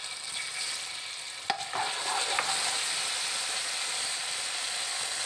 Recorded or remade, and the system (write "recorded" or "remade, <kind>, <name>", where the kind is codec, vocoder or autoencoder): recorded